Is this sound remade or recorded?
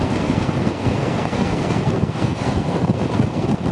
remade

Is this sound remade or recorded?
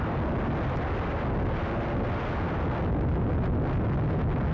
recorded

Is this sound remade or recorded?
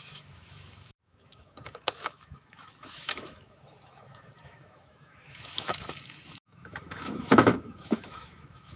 remade